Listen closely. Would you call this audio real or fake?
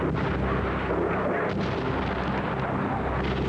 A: real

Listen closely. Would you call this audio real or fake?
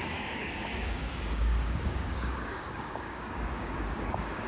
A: fake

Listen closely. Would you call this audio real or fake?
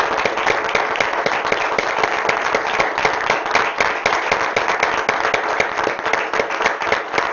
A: real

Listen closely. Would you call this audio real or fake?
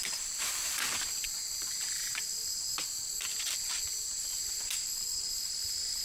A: fake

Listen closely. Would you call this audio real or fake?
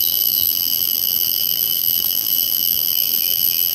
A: fake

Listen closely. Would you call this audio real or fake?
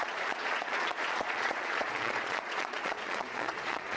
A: fake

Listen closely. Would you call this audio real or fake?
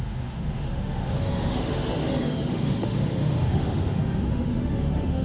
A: fake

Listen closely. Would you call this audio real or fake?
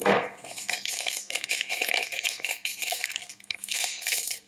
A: fake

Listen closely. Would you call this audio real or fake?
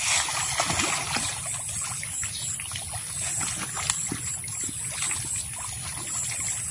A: real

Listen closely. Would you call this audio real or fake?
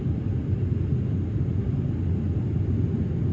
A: real